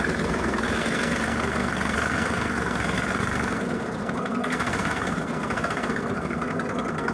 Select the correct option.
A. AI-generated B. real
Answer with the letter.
A